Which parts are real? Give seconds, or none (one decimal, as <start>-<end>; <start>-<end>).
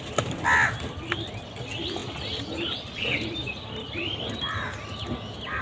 0.0-5.6